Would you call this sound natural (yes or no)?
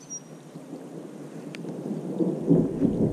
yes